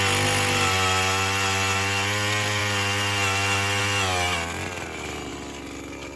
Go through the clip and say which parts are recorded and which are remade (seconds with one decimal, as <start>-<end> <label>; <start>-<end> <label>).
0.0-6.2 recorded